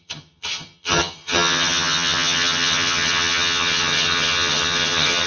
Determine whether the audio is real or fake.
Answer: fake